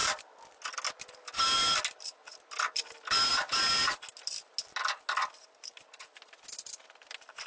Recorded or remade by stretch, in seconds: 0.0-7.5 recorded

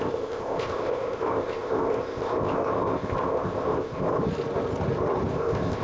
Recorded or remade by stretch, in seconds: 0.0-4.2 remade; 4.2-5.3 recorded; 5.3-5.8 remade

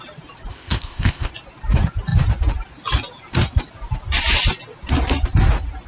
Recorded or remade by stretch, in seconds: 0.0-0.5 recorded; 0.5-1.3 remade; 1.3-5.9 recorded